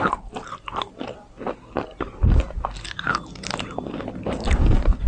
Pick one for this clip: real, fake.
fake